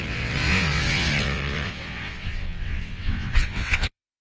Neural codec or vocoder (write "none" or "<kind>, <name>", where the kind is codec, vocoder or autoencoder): vocoder, WaveNeXt